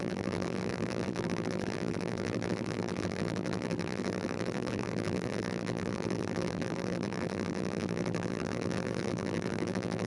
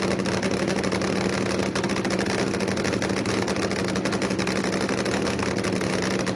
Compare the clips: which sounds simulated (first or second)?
first